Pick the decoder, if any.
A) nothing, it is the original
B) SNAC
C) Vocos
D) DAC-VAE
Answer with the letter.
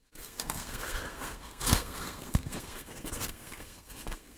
B